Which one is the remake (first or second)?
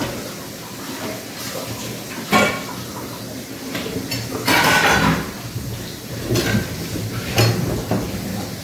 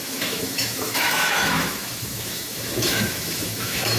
second